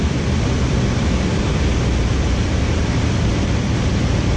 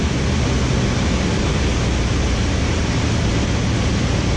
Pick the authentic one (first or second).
second